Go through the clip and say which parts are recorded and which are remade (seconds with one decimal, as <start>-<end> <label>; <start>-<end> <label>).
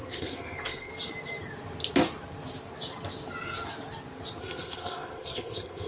0.0-0.9 remade; 0.9-4.4 recorded; 4.4-5.9 remade